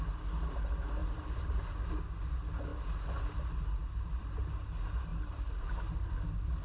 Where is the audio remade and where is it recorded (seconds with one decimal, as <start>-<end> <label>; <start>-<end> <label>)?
0.0-1.0 recorded; 1.0-1.6 remade; 1.6-5.1 recorded; 5.1-6.1 remade; 6.1-6.6 recorded